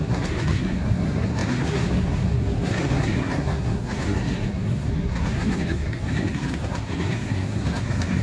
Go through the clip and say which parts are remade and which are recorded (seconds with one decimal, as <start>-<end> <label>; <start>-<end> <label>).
0.0-8.2 remade